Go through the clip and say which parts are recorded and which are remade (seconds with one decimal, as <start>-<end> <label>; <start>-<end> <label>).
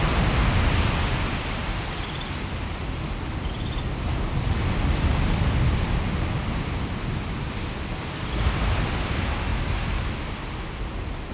0.0-11.3 recorded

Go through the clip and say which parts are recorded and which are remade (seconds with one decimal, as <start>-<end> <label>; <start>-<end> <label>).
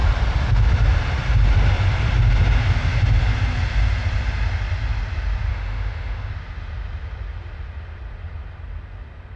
0.0-5.5 recorded; 5.5-6.3 remade; 6.3-9.4 recorded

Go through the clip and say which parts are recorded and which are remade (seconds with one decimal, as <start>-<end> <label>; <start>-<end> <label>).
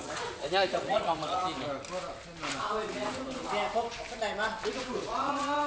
0.0-1.4 remade; 1.4-4.8 recorded; 4.8-5.7 remade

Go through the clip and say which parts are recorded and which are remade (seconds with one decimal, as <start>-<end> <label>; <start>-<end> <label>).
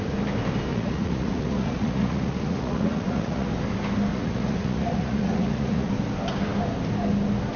0.0-0.7 recorded; 0.7-3.5 remade; 3.5-4.1 recorded; 4.1-5.9 remade; 5.9-7.6 recorded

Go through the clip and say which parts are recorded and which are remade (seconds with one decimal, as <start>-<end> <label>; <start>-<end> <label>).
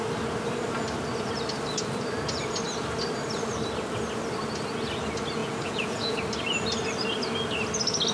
0.0-5.4 recorded; 5.4-6.2 remade; 6.2-8.1 recorded